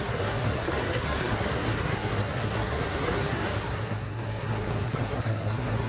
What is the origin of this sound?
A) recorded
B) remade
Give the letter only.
B